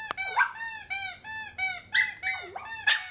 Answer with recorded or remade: recorded